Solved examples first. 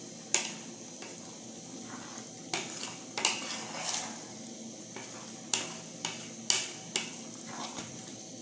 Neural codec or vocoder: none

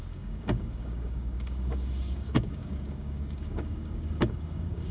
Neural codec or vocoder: codec, DAC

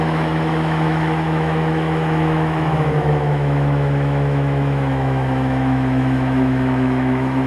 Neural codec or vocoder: autoencoder, DAC-VAE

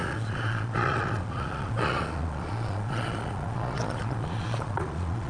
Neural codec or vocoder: vocoder, Vocos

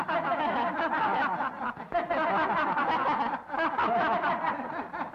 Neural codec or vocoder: none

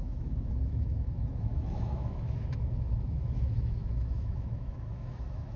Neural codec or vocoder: autoencoder, DAC-VAE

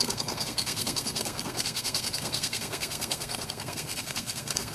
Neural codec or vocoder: codec, SNAC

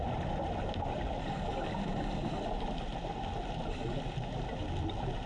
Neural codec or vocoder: none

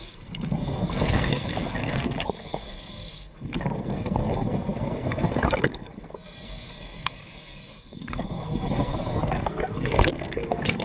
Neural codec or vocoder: codec, SNAC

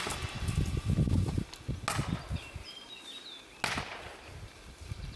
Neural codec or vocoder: none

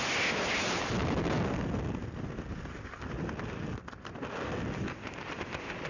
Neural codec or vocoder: none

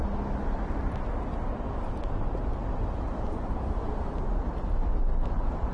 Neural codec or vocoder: none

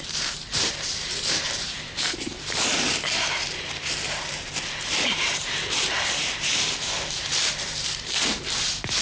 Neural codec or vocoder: vocoder, BigVGAN v2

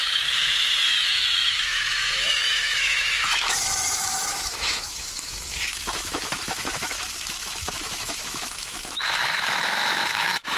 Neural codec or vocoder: autoencoder, DAC-VAE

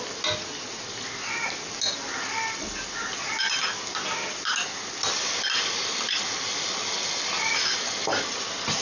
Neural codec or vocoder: none